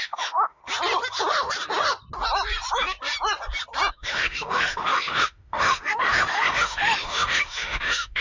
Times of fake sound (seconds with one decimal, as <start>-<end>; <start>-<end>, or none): 0.0-0.6; 3.9-8.2